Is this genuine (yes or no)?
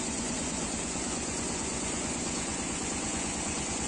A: no